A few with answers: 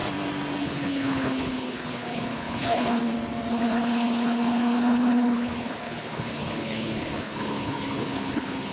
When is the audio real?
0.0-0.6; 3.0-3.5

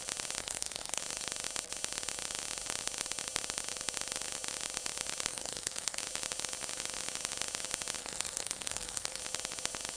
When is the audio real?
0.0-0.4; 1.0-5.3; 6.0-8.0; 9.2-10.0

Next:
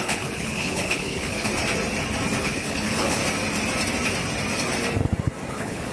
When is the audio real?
1.5-2.4; 3.2-5.5

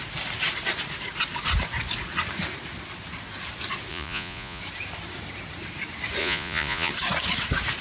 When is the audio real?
0.0-3.9; 4.6-6.2; 6.9-7.8